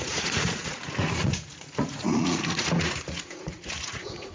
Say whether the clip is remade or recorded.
remade